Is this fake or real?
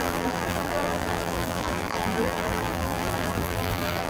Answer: fake